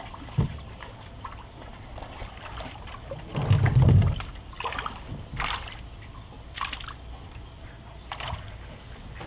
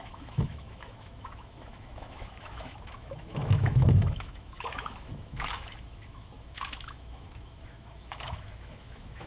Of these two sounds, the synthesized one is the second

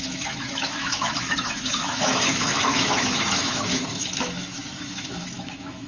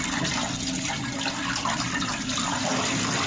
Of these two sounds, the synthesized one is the first